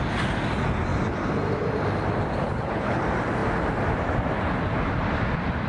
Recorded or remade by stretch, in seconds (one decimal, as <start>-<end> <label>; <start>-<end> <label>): 0.0-2.4 recorded; 2.4-3.0 remade; 3.0-5.7 recorded